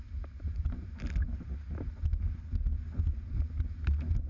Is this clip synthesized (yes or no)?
no